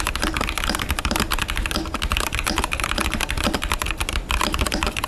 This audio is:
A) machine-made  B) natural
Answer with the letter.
B